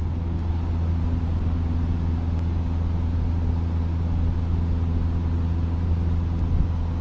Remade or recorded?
recorded